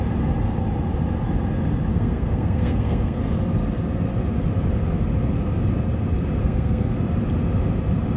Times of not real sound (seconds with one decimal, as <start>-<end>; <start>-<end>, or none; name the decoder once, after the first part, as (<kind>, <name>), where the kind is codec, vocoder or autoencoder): 1.9-3.2 (codec, SNAC); 6.4-7.0